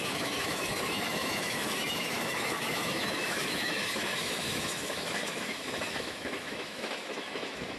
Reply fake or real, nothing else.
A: fake